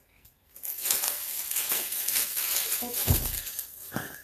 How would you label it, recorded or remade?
remade